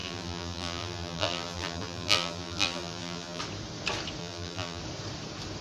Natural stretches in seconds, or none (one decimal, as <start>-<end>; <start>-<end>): 3.4-4.2; 4.8-5.6